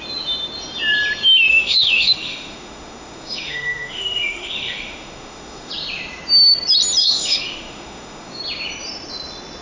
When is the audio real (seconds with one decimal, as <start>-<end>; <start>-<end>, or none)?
0.0-1.5; 5.7-7.0; 8.4-9.6